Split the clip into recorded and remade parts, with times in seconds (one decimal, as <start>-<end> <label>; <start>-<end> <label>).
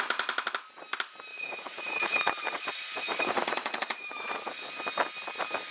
0.0-1.3 recorded; 1.3-4.7 remade; 4.7-5.7 recorded